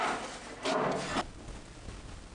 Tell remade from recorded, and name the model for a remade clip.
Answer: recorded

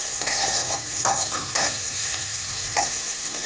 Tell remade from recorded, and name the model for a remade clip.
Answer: remade, codec, SNAC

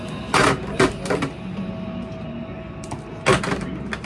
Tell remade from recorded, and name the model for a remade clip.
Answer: recorded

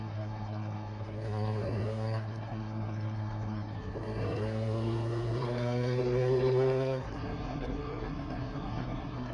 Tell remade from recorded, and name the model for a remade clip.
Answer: remade, codec, SNAC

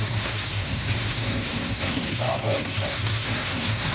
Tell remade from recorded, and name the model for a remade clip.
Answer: remade, codec, SNAC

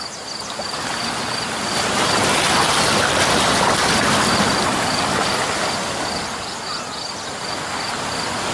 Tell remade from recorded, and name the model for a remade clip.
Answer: recorded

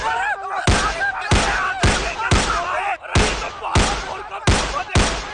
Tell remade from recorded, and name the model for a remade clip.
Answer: recorded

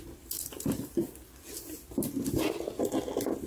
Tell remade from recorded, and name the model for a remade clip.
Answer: recorded